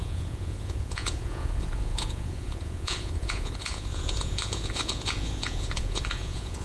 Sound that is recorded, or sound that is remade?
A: remade